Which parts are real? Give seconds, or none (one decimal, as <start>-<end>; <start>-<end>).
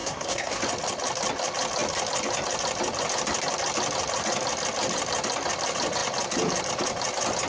0.6-7.5